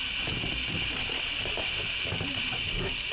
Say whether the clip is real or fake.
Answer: real